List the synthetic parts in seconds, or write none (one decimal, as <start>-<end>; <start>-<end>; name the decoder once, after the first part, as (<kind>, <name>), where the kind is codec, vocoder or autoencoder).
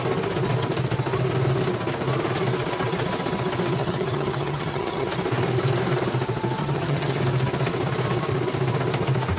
3.8-5.1 (vocoder, HiFi-GAN); 6.6-7.2